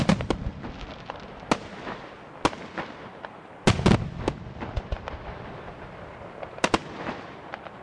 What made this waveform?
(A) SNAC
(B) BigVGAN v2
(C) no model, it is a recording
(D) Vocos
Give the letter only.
C